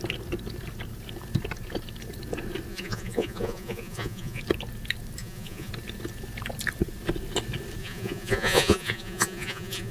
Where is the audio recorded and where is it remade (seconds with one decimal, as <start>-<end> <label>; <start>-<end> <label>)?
0.0-2.7 recorded; 2.7-4.4 remade; 4.4-5.2 recorded; 5.2-5.7 remade; 5.7-7.8 recorded; 7.8-9.9 remade